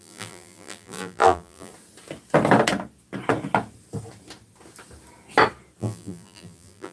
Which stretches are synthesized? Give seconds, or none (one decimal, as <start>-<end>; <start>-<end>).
0.0-1.7; 5.8-6.9